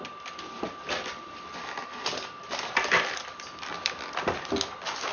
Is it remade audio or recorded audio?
recorded